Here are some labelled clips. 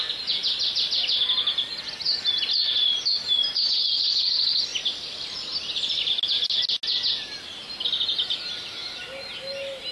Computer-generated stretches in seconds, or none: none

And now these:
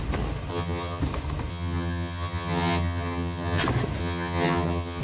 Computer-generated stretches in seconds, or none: 0.5-1.0 (vocoder, HiFi-GAN); 1.5-3.6; 4.0-5.0

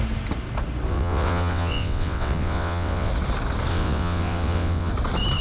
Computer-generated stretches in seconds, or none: 0.9-3.1 (vocoder, WaveNeXt); 3.7-4.9

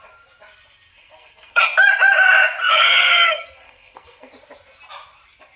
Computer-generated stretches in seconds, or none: 0.9-1.6 (codec, SNAC); 2.6-4.3

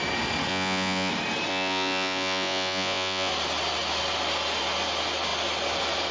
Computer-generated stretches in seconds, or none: 0.5-1.1 (vocoder, Vocos); 1.5-3.3